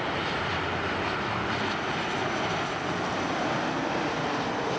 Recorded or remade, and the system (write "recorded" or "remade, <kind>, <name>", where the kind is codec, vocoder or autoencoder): recorded